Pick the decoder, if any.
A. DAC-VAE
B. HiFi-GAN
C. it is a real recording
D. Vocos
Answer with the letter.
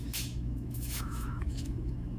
A